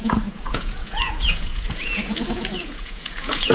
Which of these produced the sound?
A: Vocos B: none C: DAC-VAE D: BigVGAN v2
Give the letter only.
A